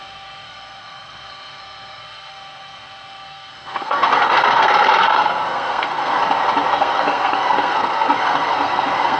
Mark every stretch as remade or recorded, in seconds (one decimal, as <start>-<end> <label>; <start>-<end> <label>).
0.0-6.2 remade; 6.2-6.7 recorded; 6.7-9.2 remade